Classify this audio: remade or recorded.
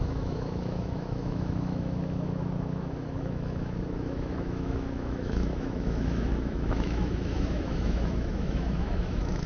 remade